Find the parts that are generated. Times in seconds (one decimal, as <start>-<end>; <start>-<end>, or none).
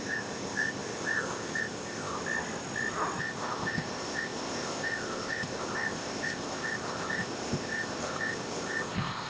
0.0-2.2; 3.2-9.3